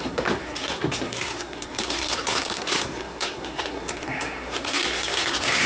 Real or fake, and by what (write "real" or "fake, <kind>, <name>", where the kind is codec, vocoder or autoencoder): fake, codec, SNAC